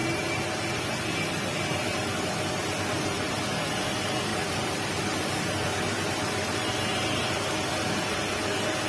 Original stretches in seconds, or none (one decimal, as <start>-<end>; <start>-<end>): 0.0-4.3; 5.3-8.9